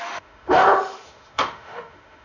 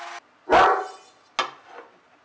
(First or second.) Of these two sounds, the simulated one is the first